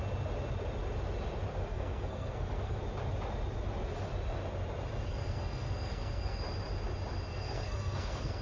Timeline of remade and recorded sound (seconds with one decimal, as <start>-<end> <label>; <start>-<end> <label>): 0.0-1.7 recorded; 1.7-2.8 remade; 2.8-5.1 recorded; 5.1-6.4 remade; 6.4-7.3 recorded; 7.3-8.4 remade